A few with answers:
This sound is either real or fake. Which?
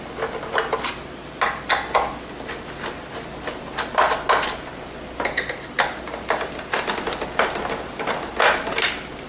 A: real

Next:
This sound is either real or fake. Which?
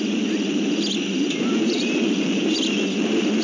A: real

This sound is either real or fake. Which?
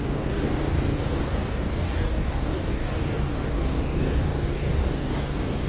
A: fake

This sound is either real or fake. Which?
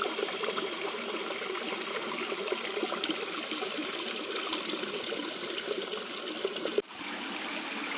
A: real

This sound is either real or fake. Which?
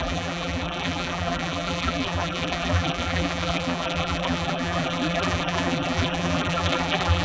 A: fake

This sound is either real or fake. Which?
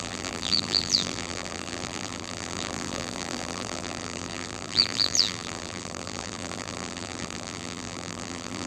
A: fake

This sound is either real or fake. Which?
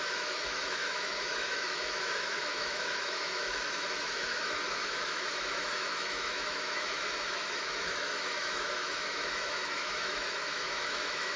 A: fake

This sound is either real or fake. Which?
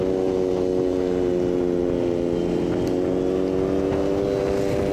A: real